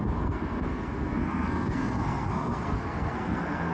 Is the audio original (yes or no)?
no